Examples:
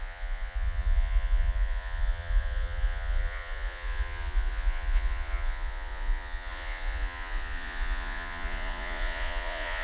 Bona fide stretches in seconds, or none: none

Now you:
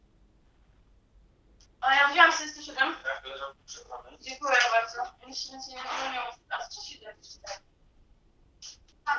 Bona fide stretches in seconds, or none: 0.0-6.2

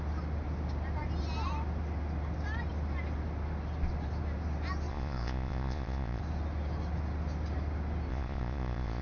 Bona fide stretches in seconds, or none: 0.0-4.9; 6.2-8.1

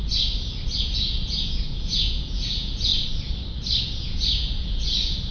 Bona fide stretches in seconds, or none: 0.0-0.8; 2.9-3.8

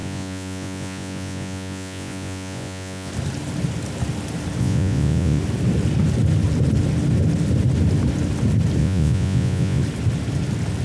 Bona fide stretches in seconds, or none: 3.1-4.6; 5.4-8.8; 9.8-10.8

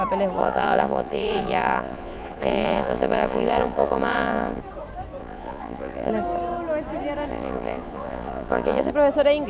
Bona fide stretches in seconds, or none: 0.0-0.4; 4.6-5.2; 6.1-7.3; 8.9-9.5